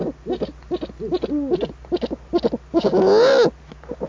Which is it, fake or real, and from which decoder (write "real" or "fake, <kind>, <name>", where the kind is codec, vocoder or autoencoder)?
real